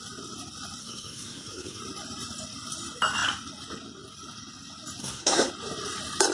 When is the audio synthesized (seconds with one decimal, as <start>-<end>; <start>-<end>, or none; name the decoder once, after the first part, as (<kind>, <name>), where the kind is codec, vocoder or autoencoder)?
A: 0.8-1.8 (codec, SNAC); 5.0-5.5